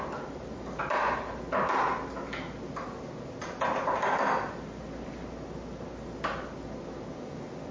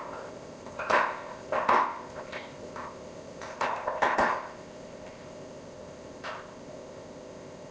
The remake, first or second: second